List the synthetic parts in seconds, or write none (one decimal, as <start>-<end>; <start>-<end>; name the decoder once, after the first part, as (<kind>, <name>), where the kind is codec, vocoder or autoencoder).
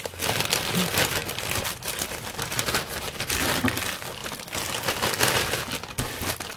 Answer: 1.2-3.8 (vocoder, BigVGAN v2)